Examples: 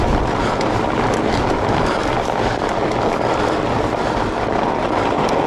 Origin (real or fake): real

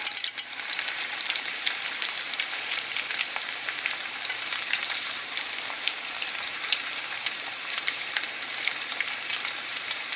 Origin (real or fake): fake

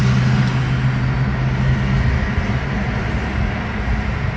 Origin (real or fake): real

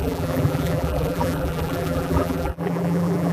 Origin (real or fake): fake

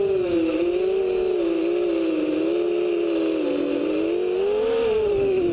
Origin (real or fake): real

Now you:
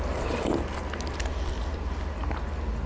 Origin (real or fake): real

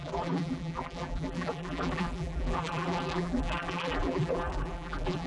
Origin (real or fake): fake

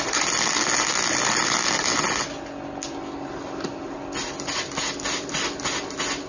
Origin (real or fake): real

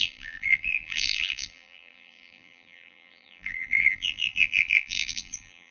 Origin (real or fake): fake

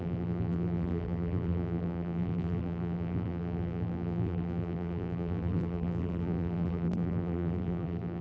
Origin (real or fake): fake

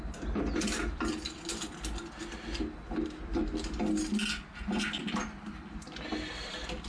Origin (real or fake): real